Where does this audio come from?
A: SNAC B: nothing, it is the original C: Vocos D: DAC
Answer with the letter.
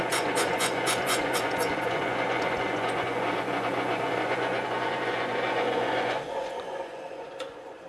C